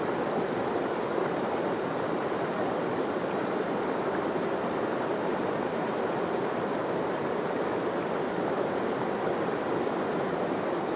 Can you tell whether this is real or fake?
fake